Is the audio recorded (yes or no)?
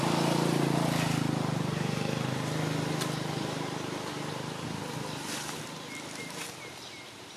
yes